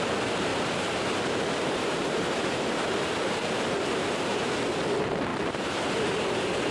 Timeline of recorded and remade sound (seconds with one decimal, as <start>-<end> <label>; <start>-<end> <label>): 0.0-0.5 recorded; 0.5-4.5 remade; 4.5-5.3 recorded; 5.3-5.8 remade; 5.8-6.7 recorded

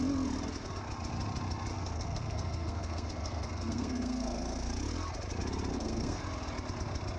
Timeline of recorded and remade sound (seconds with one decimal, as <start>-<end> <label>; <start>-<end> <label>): 0.0-1.7 recorded; 1.7-4.7 remade; 4.7-5.7 recorded; 5.7-6.2 remade; 6.2-7.2 recorded